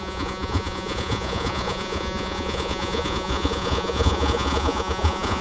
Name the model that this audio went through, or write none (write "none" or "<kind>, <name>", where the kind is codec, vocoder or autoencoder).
vocoder, Vocos